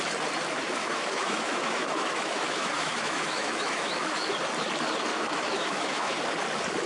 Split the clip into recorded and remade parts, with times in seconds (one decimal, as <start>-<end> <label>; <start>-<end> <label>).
0.0-0.8 recorded; 0.8-4.3 remade; 4.3-5.1 recorded; 5.1-6.2 remade; 6.2-6.9 recorded